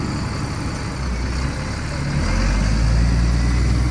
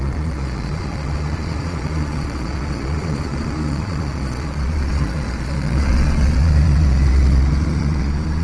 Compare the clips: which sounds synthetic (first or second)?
second